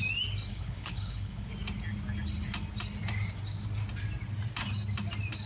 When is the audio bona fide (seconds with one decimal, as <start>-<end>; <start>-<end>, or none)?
0.0-0.5; 1.5-5.5